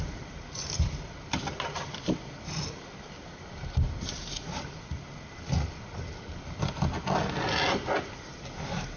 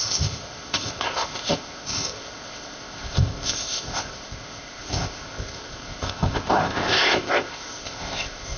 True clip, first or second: first